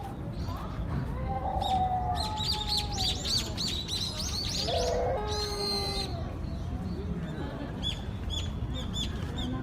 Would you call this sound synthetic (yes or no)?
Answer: no